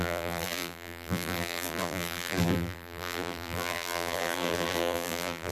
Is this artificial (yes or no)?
yes